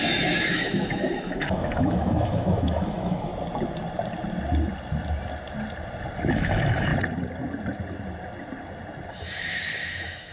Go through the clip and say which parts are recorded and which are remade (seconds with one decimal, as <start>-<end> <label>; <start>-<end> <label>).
0.0-3.3 remade; 3.3-6.3 recorded; 6.3-6.9 remade; 6.9-9.1 recorded; 9.1-10.3 remade